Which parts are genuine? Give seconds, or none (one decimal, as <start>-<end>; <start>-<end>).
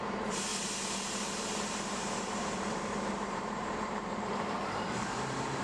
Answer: 0.5-1.8